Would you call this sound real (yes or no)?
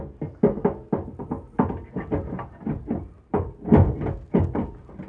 yes